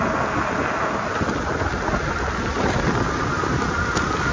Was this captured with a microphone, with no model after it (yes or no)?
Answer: yes